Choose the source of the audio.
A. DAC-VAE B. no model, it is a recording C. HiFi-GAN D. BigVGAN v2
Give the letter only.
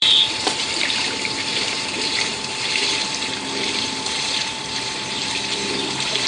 D